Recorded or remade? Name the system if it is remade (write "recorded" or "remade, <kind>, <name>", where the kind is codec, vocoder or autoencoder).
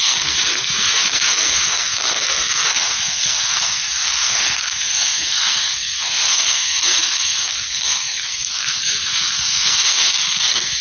remade, codec, SNAC